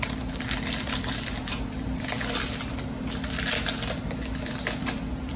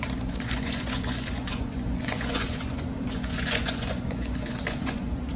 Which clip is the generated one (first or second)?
second